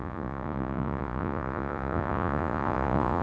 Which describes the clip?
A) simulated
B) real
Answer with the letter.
A